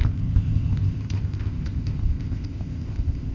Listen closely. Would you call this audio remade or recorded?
remade